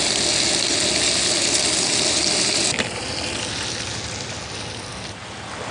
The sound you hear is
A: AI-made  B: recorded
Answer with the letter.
B